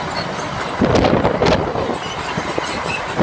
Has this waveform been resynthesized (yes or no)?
no